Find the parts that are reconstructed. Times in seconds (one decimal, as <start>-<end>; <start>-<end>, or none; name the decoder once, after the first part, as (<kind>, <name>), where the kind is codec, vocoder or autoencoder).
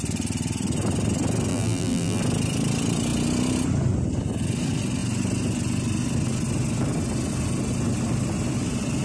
1.5-2.2 (vocoder, BigVGAN v2)